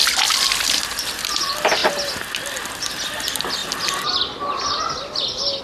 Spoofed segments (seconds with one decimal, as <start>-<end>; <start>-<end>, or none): none